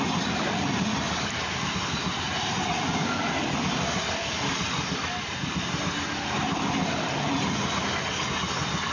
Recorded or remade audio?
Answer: recorded